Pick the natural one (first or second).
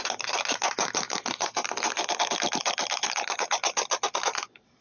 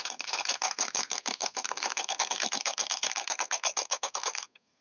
first